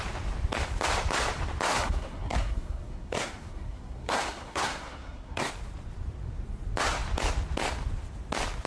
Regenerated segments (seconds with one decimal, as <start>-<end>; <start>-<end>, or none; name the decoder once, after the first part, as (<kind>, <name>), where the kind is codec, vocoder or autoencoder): 1.7-5.5 (codec, SNAC)